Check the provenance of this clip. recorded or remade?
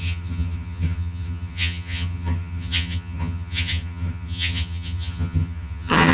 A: remade